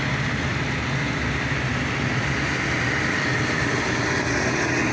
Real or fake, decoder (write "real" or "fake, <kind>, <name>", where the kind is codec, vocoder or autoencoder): real